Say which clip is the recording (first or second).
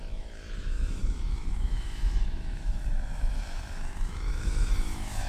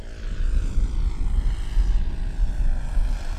second